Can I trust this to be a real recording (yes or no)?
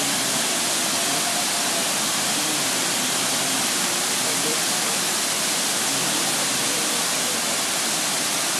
no